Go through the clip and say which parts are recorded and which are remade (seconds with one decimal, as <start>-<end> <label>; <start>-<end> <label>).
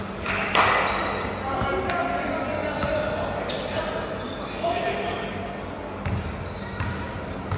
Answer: 0.0-7.6 recorded